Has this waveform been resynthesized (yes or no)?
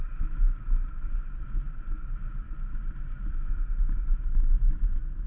no